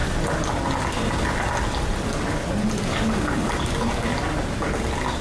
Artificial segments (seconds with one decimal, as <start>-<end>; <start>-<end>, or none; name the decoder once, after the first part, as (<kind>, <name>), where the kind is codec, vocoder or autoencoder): 2.9-4.1 (codec, DAC)